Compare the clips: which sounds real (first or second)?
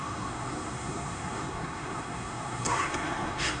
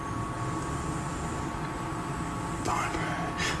second